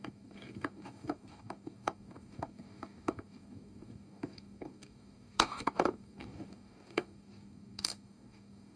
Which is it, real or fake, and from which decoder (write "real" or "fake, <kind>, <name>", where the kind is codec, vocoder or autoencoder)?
fake, codec, DAC